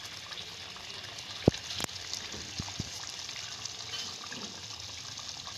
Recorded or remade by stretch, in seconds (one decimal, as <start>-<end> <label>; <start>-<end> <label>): 0.0-5.6 recorded